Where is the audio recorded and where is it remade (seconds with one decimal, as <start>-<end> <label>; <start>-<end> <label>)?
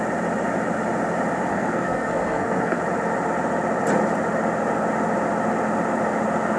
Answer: 0.0-1.5 recorded; 1.5-2.8 remade; 2.8-6.6 recorded